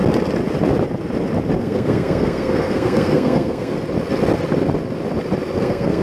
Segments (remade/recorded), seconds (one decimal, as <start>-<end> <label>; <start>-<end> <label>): 0.0-1.6 recorded; 1.6-3.7 remade; 3.7-5.6 recorded; 5.6-6.0 remade